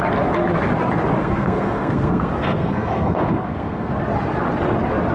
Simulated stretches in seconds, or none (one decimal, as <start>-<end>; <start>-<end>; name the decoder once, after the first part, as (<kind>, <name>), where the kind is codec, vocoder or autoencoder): 1.2-3.9 (codec, SNAC)